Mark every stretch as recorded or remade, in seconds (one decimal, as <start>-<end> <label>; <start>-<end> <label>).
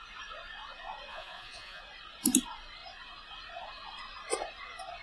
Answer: 0.0-1.1 recorded; 1.1-1.8 remade; 1.8-5.0 recorded